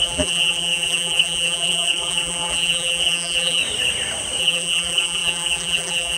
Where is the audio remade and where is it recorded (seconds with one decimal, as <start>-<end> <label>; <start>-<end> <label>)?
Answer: 0.0-3.6 remade; 3.6-4.4 recorded; 4.4-6.2 remade

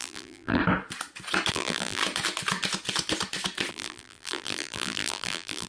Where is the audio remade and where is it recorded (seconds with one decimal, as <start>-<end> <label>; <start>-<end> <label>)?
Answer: 0.0-0.6 remade; 0.6-1.5 recorded; 1.5-2.0 remade; 2.0-3.7 recorded; 3.7-5.7 remade

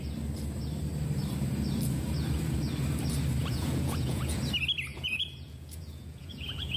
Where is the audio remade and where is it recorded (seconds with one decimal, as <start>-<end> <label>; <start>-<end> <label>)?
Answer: 0.0-3.4 recorded; 3.4-4.4 remade; 4.4-4.9 recorded; 4.9-6.8 remade

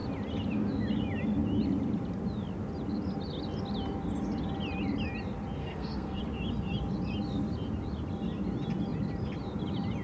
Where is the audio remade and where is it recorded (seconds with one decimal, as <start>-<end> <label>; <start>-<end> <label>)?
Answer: 0.0-5.6 recorded; 5.6-6.2 remade; 6.2-10.0 recorded

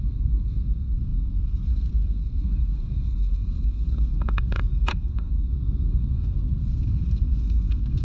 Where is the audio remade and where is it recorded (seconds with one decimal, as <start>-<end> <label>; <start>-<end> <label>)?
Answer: 0.0-8.0 remade